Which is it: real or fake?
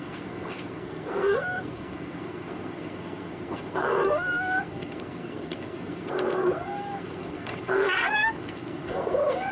fake